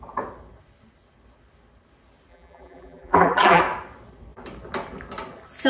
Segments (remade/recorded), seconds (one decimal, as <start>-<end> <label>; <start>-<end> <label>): 0.0-2.3 recorded; 2.3-3.6 remade; 3.6-5.7 recorded